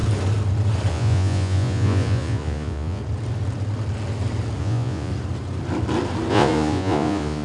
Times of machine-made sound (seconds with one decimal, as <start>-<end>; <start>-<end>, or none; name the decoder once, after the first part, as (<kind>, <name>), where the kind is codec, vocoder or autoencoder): 0.9-3.0 (vocoder, Vocos); 4.6-5.1; 6.3-7.4